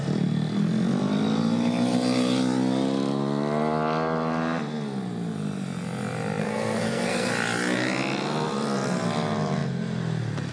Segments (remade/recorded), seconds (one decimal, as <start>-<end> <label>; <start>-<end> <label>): 0.0-6.4 recorded; 6.4-7.3 remade; 7.3-10.5 recorded